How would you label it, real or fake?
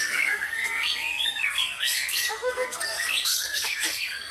fake